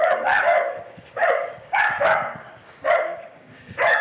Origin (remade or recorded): remade